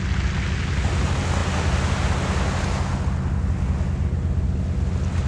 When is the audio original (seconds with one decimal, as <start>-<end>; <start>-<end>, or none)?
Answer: 0.0-5.3